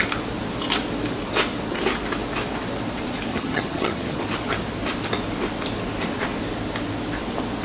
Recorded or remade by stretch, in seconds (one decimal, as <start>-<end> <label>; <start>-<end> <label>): 0.0-3.3 recorded; 3.3-4.2 remade; 4.2-7.6 recorded